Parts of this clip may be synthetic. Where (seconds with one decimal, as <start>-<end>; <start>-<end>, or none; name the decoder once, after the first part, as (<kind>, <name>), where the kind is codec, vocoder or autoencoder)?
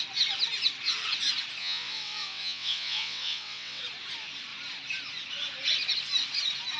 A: 1.6-3.8 (vocoder, WaveNeXt)